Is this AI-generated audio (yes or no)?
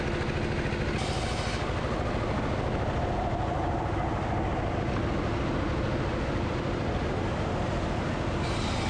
no